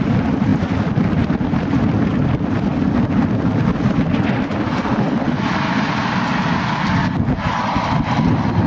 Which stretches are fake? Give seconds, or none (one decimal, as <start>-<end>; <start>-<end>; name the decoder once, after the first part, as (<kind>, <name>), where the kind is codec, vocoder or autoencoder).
none